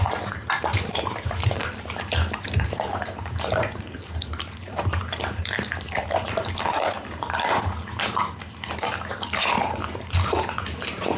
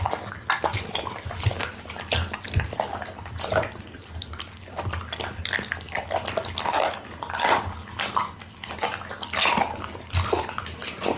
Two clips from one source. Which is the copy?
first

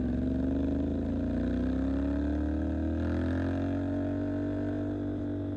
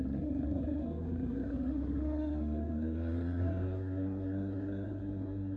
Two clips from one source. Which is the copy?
second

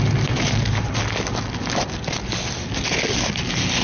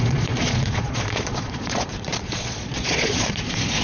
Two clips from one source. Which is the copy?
second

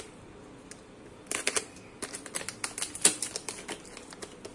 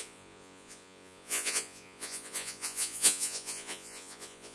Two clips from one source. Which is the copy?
second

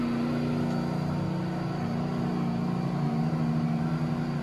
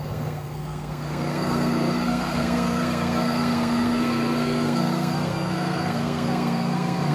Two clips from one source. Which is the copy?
second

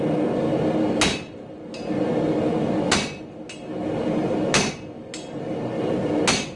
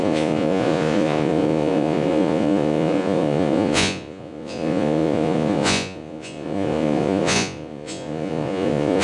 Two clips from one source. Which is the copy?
second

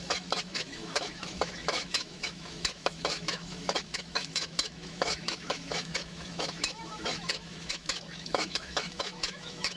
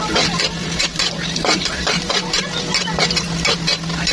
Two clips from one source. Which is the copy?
first